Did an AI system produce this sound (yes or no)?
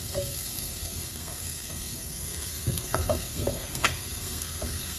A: yes